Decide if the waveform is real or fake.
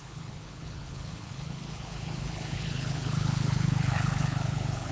fake